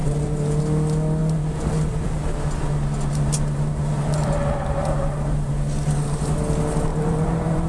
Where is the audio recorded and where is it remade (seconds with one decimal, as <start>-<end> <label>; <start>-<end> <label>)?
0.0-0.6 remade; 0.6-1.2 recorded; 1.2-2.4 remade; 2.4-3.1 recorded; 3.1-5.5 remade; 5.5-6.9 recorded; 6.9-7.7 remade